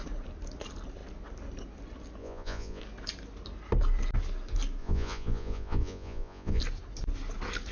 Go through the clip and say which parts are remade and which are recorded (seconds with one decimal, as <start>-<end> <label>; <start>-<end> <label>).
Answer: 0.0-2.2 recorded; 2.2-2.8 remade; 2.8-4.8 recorded; 4.8-6.6 remade; 6.6-7.7 recorded